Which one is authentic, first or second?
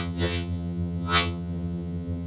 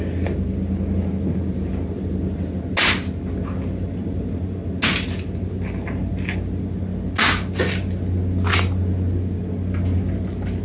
second